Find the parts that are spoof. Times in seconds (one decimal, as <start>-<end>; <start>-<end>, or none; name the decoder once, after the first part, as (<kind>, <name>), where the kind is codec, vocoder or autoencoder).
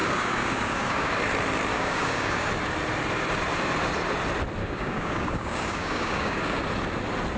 0.0-1.1 (codec, DAC); 1.7-2.5; 4.6-6.6